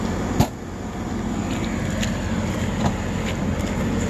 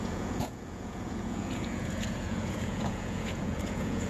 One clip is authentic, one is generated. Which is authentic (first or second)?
first